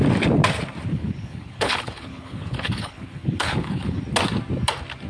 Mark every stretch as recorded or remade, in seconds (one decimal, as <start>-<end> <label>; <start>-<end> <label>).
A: 0.0-0.9 recorded; 0.9-4.0 remade; 4.0-5.1 recorded